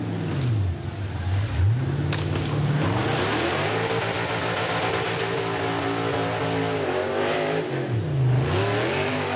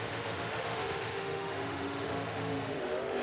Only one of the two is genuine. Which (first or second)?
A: first